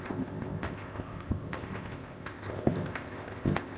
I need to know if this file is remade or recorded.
remade